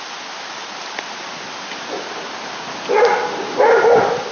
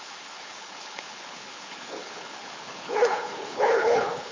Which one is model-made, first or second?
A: second